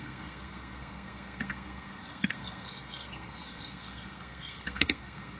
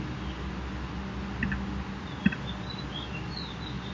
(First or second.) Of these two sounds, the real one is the second